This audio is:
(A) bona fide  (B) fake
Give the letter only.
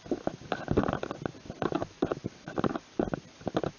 A